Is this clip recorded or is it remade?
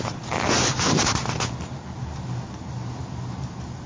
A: recorded